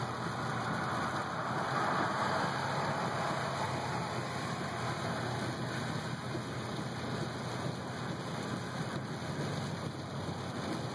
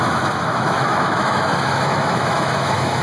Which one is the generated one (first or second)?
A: second